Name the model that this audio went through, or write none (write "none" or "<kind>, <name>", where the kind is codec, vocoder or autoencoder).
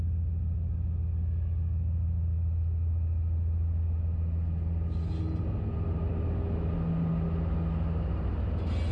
none